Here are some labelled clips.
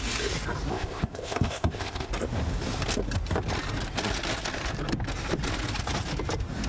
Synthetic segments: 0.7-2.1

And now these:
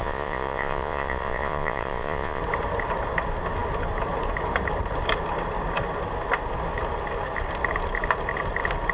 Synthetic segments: 0.0-2.4

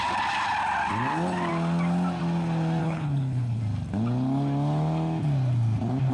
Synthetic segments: 2.8-3.6